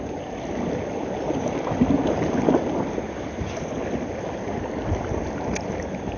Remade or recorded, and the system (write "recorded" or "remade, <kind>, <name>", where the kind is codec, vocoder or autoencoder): recorded